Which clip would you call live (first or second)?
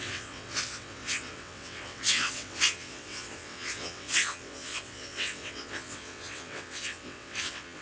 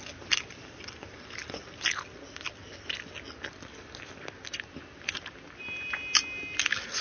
second